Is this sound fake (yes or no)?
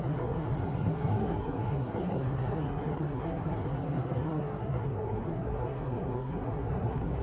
yes